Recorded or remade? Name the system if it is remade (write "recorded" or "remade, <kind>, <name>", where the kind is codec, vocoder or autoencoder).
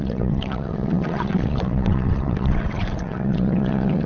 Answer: remade, vocoder, WaveNeXt